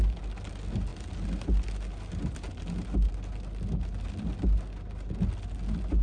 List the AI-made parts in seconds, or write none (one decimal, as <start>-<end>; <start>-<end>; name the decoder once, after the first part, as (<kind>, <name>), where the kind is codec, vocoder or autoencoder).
none